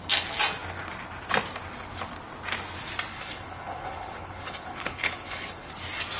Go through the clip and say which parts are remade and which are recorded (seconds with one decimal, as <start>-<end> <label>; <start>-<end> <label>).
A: 0.0-3.1 recorded; 3.1-5.7 remade; 5.7-6.2 recorded